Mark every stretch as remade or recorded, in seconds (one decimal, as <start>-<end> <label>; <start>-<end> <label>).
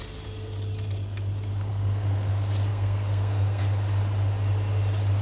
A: 0.0-1.7 recorded; 1.7-2.3 remade; 2.3-2.7 recorded; 2.7-3.6 remade; 3.6-5.2 recorded